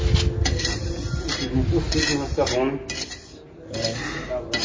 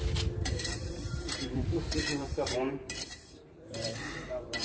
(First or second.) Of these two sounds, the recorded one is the first